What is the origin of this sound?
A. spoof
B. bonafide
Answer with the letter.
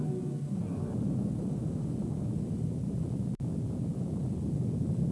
B